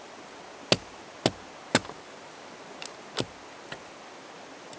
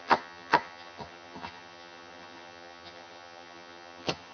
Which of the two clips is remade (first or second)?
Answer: second